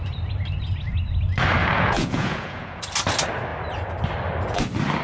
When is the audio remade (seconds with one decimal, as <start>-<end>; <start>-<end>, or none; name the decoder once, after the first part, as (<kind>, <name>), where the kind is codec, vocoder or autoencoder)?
1.6-2.8 (vocoder, Vocos)